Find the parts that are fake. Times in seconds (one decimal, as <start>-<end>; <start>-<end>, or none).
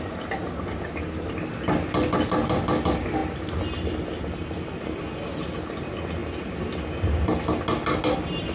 none